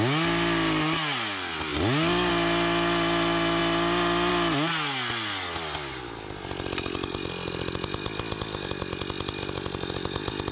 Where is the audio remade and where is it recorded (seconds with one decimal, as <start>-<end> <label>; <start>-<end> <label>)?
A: 0.0-10.5 recorded